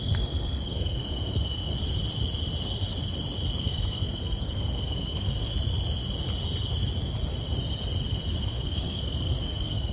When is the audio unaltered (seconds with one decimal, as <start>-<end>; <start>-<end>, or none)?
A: 1.7-3.6; 5.5-8.4